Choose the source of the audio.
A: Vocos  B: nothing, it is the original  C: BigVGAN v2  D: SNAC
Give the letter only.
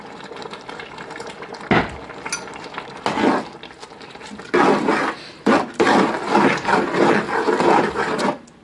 B